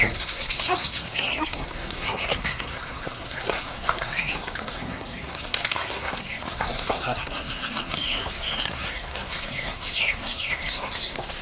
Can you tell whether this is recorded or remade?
remade